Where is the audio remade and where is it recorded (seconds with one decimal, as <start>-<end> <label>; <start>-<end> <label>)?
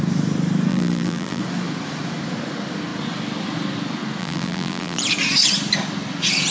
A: 0.0-0.7 recorded; 0.7-1.4 remade; 1.4-4.2 recorded; 4.2-5.0 remade; 5.0-6.5 recorded